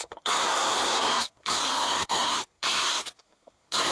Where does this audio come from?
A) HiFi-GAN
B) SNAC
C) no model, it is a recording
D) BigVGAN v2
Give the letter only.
B